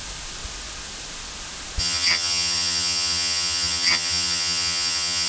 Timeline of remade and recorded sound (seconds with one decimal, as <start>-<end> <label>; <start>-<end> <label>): 0.0-1.8 recorded; 1.8-5.3 remade